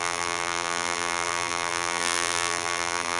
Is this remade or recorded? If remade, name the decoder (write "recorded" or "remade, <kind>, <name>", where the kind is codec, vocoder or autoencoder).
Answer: remade, vocoder, BigVGAN v2